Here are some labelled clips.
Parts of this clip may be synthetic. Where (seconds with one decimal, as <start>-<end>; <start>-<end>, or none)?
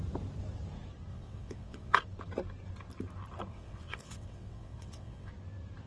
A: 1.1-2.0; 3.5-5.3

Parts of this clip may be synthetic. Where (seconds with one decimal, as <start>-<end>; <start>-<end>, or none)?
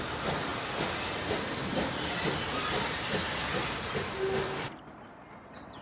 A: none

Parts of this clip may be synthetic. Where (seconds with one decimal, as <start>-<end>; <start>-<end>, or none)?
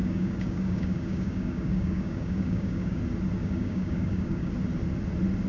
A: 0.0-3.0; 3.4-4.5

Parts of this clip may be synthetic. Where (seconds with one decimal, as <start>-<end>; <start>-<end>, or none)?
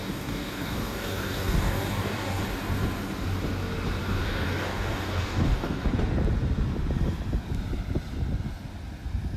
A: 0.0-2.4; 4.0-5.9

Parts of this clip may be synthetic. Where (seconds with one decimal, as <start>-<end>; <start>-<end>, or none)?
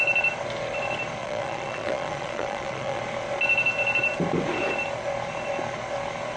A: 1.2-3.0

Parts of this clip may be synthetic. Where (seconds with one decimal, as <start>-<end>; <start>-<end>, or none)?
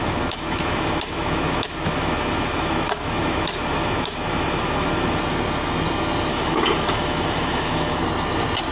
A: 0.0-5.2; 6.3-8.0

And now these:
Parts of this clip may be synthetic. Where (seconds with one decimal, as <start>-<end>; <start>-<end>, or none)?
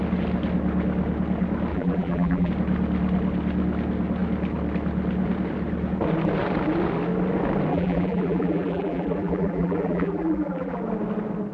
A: 1.7-2.5; 7.7-10.8